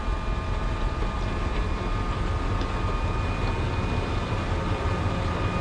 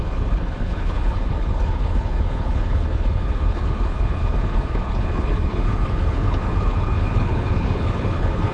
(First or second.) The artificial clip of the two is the second